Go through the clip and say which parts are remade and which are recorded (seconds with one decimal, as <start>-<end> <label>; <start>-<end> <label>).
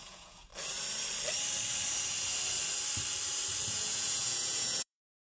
0.0-0.5 remade; 0.5-3.7 recorded; 3.7-5.3 remade